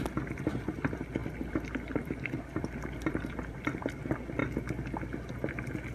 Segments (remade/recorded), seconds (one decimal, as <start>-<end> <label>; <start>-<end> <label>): 0.0-1.2 recorded; 1.2-3.9 remade; 3.9-5.9 recorded